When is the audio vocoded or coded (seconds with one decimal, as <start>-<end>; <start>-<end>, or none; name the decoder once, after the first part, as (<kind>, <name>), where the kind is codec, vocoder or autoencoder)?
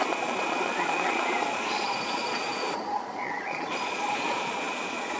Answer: 0.0-5.2 (vocoder, Vocos)